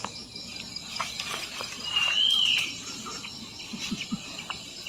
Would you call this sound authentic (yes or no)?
yes